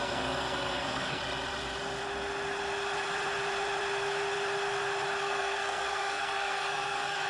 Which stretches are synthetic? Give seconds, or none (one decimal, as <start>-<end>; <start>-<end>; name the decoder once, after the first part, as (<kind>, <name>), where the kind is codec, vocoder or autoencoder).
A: 0.0-1.2 (codec, SNAC); 5.2-7.3